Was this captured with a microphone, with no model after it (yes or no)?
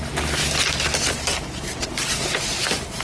yes